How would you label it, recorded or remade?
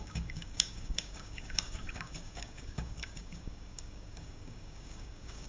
remade